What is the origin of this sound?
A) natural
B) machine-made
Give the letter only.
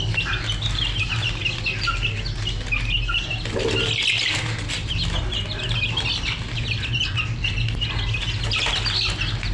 A